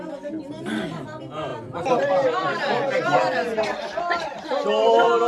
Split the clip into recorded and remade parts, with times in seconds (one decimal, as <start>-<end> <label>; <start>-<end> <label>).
0.0-5.3 recorded